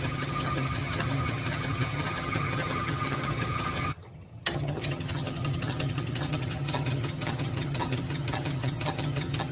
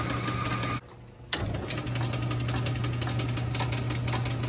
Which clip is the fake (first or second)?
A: first